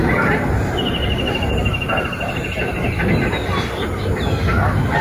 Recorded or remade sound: recorded